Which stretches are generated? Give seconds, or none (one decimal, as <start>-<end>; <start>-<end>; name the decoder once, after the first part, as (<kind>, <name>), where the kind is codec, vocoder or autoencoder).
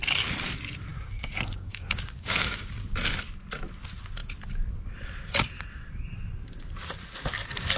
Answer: 0.9-2.7 (codec, DAC)